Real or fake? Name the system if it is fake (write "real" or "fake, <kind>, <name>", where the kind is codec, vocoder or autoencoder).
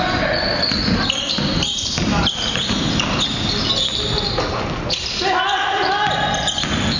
real